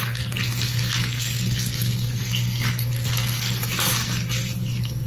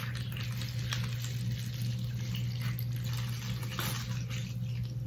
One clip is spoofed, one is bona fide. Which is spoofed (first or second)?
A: first